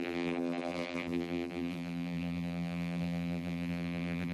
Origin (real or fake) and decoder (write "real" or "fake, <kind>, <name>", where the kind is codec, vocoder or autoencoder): fake, vocoder, BigVGAN v2